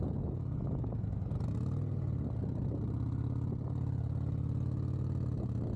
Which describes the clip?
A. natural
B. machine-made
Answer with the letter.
A